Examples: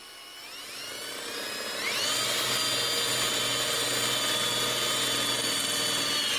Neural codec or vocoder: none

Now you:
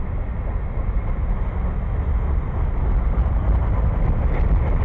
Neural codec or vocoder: none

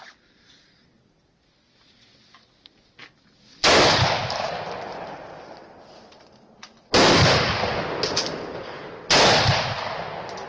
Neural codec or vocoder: none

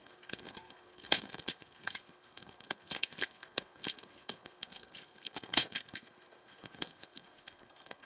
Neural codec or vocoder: codec, SNAC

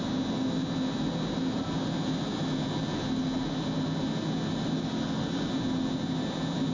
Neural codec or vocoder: none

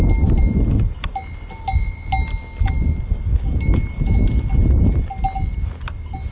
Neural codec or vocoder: none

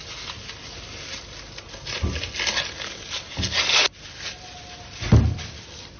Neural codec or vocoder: none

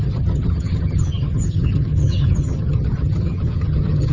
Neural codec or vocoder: vocoder, HiFi-GAN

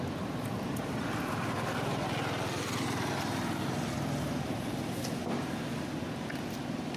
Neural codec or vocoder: none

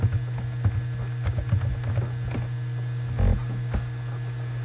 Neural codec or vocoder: none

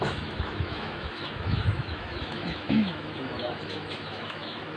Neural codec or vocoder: autoencoder, DAC-VAE